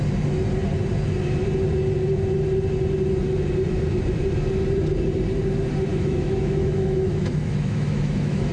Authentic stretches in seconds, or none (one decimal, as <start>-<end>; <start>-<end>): 0.0-5.9